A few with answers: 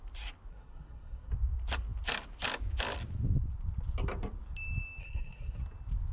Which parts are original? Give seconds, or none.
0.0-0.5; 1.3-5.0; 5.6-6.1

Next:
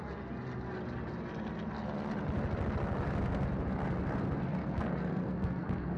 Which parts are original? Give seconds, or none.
0.0-4.6

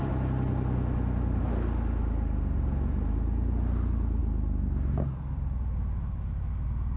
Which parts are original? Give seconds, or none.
0.0-7.0

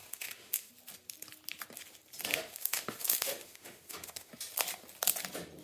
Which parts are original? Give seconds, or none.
0.7-2.3; 4.3-5.6

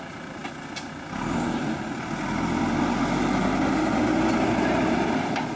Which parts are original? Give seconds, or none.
0.0-5.6